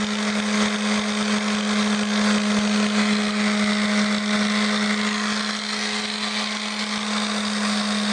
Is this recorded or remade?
recorded